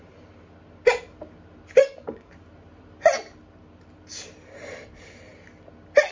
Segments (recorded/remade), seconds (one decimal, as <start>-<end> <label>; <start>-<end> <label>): 0.0-1.8 recorded; 1.8-2.3 remade; 2.3-6.1 recorded